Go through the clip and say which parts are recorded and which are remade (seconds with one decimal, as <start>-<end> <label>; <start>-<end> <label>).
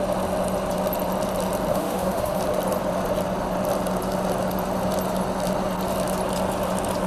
0.0-1.7 recorded; 1.7-2.4 remade; 2.4-7.1 recorded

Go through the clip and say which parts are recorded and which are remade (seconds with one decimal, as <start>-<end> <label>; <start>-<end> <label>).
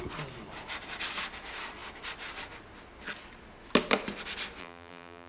0.0-4.6 recorded; 4.6-5.3 remade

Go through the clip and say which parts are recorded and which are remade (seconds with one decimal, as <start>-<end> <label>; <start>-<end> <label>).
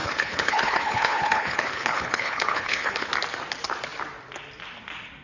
0.0-3.1 remade; 3.1-5.2 recorded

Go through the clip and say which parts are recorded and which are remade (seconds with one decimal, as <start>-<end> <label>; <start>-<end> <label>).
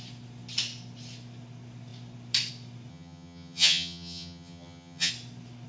0.0-2.9 recorded; 2.9-5.1 remade; 5.1-5.7 recorded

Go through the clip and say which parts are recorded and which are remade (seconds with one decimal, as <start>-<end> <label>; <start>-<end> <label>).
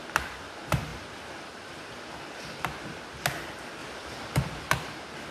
0.0-0.9 recorded; 0.9-2.0 remade; 2.0-3.8 recorded; 3.8-4.7 remade; 4.7-5.3 recorded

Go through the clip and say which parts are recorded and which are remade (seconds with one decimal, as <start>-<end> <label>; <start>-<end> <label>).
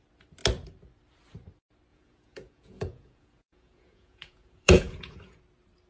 0.0-1.9 recorded; 1.9-5.4 remade; 5.4-5.9 recorded